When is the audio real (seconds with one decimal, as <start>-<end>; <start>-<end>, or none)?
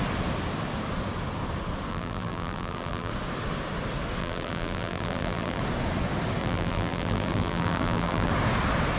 0.0-1.9; 3.1-4.2; 5.6-6.4; 8.3-9.0